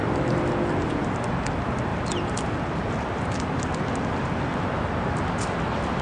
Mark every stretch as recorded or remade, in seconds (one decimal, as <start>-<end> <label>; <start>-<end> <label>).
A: 0.0-1.0 remade; 1.0-4.5 recorded; 4.5-5.4 remade; 5.4-6.0 recorded